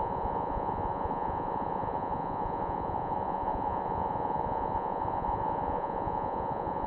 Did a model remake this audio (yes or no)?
yes